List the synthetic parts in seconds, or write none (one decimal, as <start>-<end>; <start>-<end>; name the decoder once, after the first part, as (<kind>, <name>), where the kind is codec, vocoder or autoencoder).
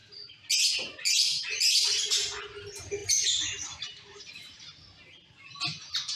none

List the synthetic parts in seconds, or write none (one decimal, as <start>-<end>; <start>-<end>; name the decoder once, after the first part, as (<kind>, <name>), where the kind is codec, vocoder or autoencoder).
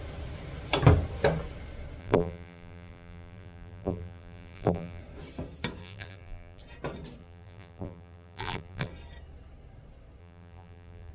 2.0-5.0 (vocoder, BigVGAN v2); 5.8-6.6; 7.2-8.9; 10.2-11.1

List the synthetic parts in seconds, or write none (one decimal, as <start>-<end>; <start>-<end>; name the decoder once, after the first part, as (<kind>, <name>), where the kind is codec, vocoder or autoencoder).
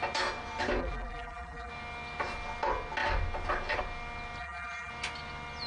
0.8-1.7 (vocoder, BigVGAN v2); 4.4-4.9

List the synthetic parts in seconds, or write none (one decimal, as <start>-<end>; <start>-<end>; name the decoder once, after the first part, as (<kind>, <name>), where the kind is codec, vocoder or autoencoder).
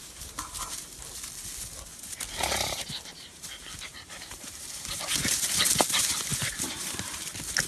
0.0-0.9 (vocoder, BigVGAN v2); 1.9-5.4; 6.3-7.3